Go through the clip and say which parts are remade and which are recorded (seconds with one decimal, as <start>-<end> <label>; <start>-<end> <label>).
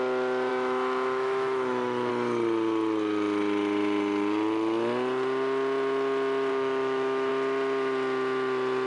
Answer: 0.0-0.5 recorded; 0.5-2.1 remade; 2.1-6.5 recorded; 6.5-7.3 remade; 7.3-8.9 recorded